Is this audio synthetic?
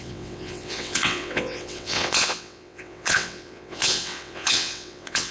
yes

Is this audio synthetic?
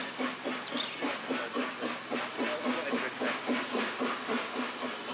no